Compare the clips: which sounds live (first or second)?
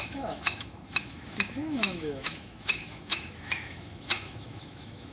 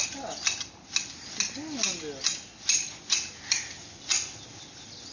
second